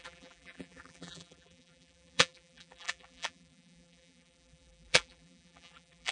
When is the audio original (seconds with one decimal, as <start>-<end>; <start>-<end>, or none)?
none

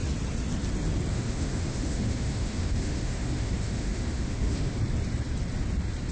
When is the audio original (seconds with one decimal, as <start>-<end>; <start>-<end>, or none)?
0.0-1.1; 4.8-6.1

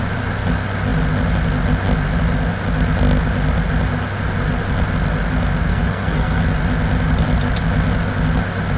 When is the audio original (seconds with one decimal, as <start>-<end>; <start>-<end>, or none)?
0.0-5.7; 6.4-8.8

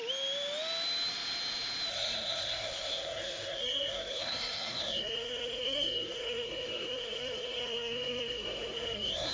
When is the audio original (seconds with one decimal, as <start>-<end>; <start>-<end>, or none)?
0.0-1.9

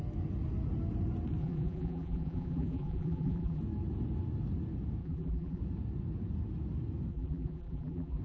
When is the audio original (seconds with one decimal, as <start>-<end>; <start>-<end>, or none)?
0.0-1.4; 3.6-5.0; 5.6-7.1